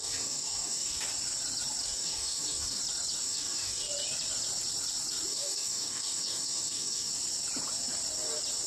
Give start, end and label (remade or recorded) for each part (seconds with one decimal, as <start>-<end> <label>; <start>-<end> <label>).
0.0-1.0 remade; 1.0-1.8 recorded; 1.8-2.8 remade; 2.8-3.2 recorded; 3.2-3.9 remade; 3.9-5.3 recorded; 5.3-7.1 remade; 7.1-8.7 recorded

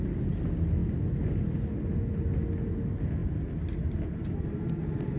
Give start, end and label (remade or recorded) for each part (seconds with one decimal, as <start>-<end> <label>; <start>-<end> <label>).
0.0-5.2 recorded